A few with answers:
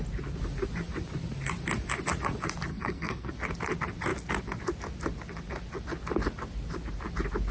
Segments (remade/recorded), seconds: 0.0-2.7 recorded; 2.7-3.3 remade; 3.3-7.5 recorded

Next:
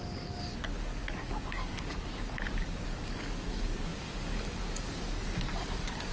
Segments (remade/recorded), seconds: 0.0-6.1 remade

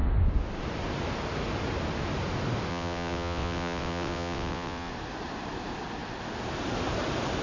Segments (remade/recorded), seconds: 0.0-2.7 recorded; 2.7-4.9 remade; 4.9-7.4 recorded